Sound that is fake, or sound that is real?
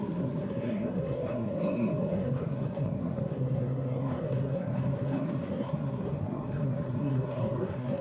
fake